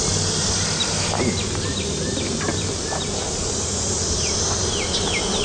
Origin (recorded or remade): recorded